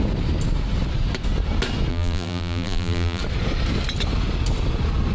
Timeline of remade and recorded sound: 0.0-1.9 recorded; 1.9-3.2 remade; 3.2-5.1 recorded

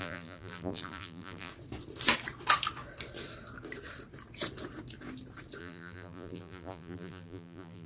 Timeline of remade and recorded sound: 0.0-1.5 remade; 1.5-5.6 recorded; 5.6-7.9 remade

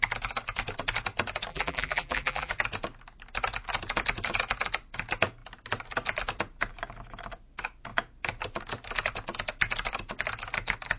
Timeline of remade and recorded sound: 0.0-1.5 recorded; 1.5-2.5 remade; 2.5-11.0 recorded

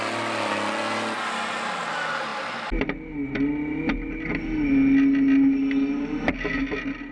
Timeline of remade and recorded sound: 0.0-7.1 recorded

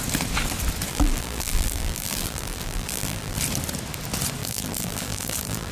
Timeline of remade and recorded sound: 0.0-0.9 recorded; 0.9-3.4 remade; 3.4-4.4 recorded; 4.4-5.7 remade